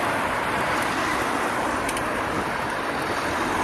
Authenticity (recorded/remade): recorded